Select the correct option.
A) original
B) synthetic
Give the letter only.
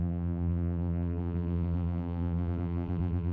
B